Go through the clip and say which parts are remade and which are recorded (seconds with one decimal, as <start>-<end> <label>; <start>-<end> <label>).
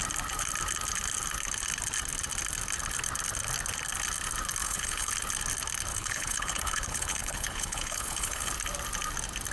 0.0-4.6 recorded; 4.6-5.1 remade; 5.1-5.9 recorded; 5.9-8.5 remade; 8.5-9.5 recorded